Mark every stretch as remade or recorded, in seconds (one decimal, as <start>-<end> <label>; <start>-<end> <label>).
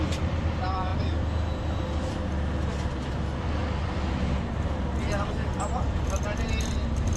0.0-7.2 recorded